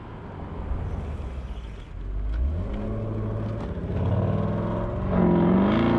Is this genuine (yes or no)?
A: yes